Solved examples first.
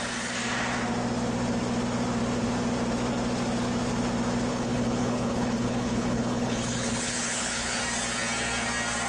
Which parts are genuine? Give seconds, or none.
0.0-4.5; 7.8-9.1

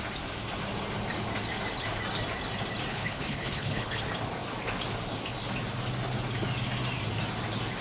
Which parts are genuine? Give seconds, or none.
0.0-2.9; 4.0-7.8

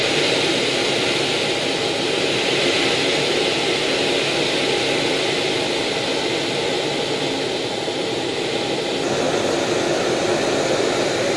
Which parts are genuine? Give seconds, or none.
0.0-11.4